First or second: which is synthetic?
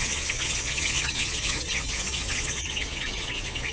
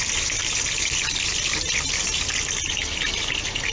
first